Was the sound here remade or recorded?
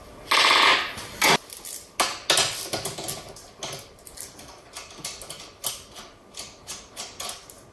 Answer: recorded